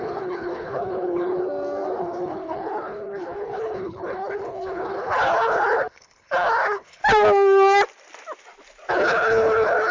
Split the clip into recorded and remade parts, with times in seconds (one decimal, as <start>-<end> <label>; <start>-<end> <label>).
0.0-1.4 remade; 1.4-2.0 recorded; 2.0-7.0 remade; 7.0-8.9 recorded; 8.9-9.9 remade